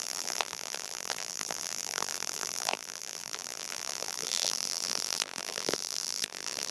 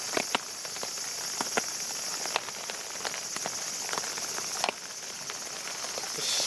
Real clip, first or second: second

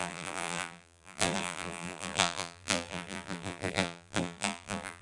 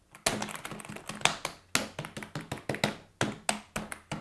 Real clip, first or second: second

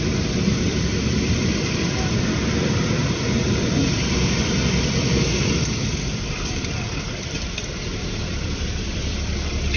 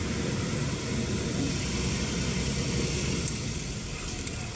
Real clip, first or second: second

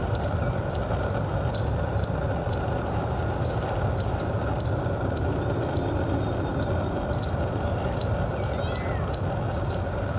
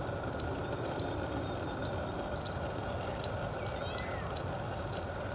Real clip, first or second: first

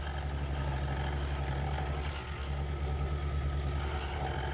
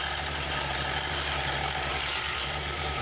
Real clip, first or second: first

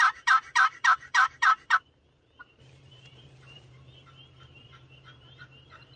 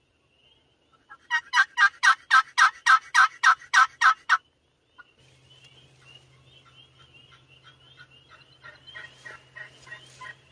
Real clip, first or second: second